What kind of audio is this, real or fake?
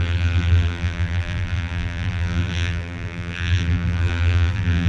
fake